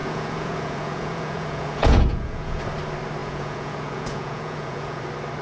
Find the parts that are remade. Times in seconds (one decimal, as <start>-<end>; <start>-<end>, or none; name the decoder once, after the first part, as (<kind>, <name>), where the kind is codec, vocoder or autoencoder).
0.0-2.6 (vocoder, Vocos); 3.2-5.0